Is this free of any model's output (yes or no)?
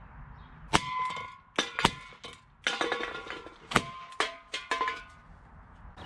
yes